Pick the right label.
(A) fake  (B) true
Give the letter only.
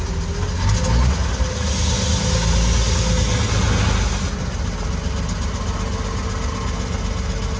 B